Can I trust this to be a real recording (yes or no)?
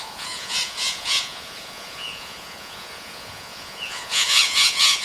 no